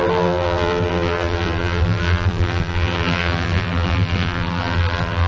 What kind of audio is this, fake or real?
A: fake